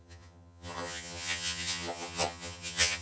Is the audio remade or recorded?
remade